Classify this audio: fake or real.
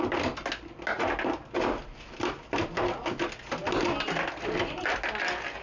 real